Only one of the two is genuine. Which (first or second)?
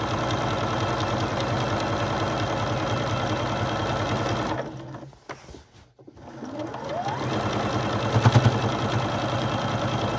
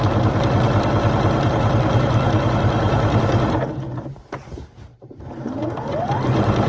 first